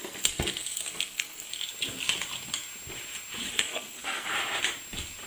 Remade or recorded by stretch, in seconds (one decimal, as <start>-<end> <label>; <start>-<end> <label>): 0.0-1.5 remade; 1.5-3.5 recorded; 3.5-4.3 remade; 4.3-5.3 recorded